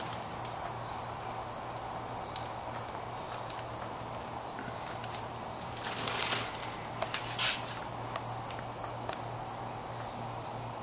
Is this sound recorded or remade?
recorded